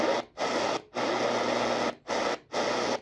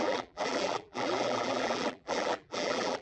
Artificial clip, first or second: second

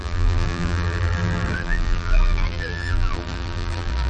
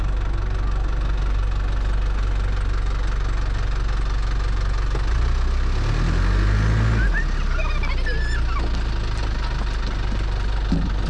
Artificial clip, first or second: first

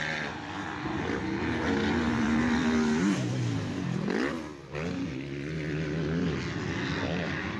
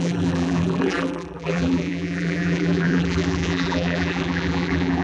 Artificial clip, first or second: second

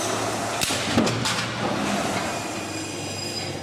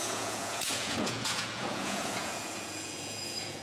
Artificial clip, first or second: second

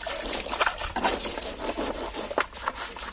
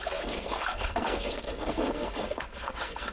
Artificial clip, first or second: second